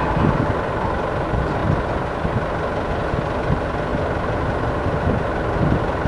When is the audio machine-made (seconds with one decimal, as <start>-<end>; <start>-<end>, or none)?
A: none